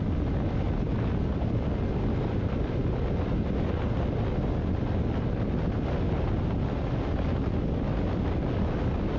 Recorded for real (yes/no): yes